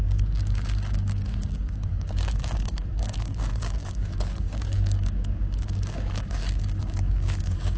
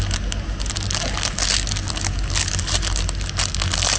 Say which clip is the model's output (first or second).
first